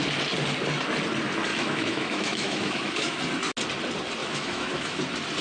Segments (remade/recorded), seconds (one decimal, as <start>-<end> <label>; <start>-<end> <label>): 0.0-1.5 recorded; 1.5-3.2 remade; 3.2-4.2 recorded; 4.2-5.0 remade; 5.0-5.4 recorded